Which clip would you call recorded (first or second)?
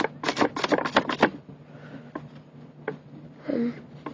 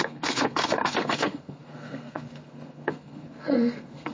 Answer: first